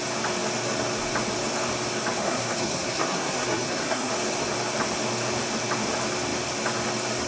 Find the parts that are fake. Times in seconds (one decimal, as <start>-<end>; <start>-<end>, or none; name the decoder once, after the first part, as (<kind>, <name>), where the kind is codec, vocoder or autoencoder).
2.2-4.1 (codec, SNAC)